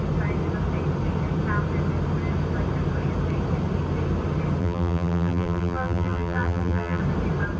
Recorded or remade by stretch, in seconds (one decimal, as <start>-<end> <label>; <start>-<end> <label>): 0.0-4.6 recorded; 4.6-7.0 remade; 7.0-7.6 recorded